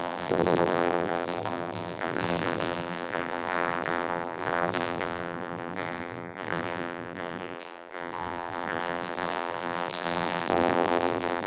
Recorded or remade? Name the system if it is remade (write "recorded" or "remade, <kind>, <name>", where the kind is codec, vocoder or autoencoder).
remade, vocoder, BigVGAN v2